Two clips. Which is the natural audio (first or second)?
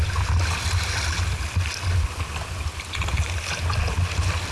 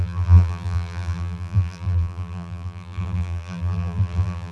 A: first